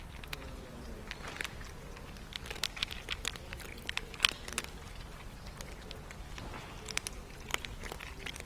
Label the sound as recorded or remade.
recorded